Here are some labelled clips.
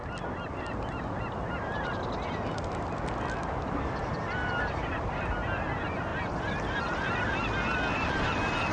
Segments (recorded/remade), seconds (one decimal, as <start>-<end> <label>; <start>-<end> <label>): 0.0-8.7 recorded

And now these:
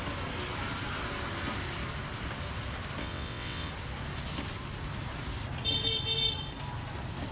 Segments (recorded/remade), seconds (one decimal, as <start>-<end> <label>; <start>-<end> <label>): 0.0-3.0 recorded; 3.0-3.7 remade; 3.7-7.3 recorded

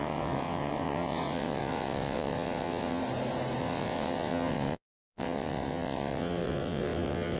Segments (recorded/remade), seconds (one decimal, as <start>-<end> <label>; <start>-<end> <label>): 0.0-3.0 remade; 3.0-3.6 recorded; 3.6-7.4 remade

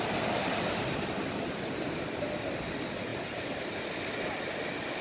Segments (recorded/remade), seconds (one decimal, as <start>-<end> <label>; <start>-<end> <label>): 0.0-5.0 recorded